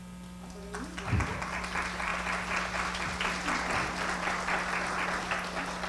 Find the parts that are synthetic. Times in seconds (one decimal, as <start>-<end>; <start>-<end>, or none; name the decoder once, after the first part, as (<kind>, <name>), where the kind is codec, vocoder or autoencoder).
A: none